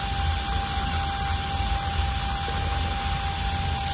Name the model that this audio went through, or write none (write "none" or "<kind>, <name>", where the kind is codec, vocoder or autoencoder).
none